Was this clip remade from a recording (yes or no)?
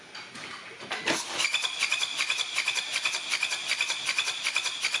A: no